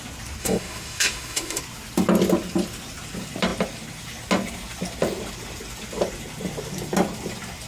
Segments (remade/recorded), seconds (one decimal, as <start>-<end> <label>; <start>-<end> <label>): 0.0-0.4 recorded; 0.4-1.6 remade; 1.6-7.7 recorded